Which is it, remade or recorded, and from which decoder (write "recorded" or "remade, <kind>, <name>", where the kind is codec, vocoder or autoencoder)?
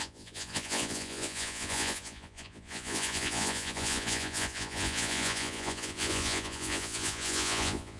remade, vocoder, Vocos